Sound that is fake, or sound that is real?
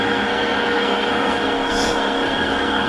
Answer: fake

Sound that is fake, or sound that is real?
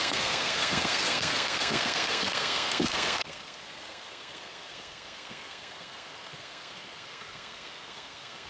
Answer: fake